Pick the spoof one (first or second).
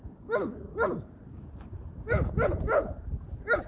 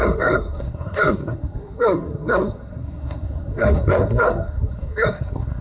second